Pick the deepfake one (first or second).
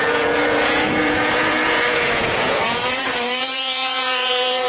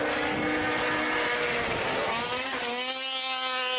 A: first